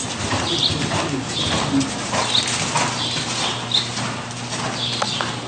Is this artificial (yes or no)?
no